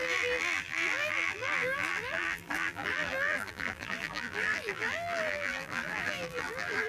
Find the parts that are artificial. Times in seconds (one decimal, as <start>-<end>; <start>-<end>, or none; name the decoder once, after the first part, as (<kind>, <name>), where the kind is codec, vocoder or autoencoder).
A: 0.0-6.9 (vocoder, BigVGAN v2)